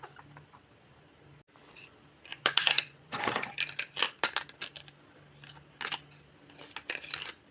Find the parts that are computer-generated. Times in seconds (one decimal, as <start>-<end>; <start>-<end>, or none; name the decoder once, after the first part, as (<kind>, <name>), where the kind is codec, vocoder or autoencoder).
2.3-3.5 (vocoder, Vocos)